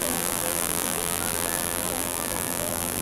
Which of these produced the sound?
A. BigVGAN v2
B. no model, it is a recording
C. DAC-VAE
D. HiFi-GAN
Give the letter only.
A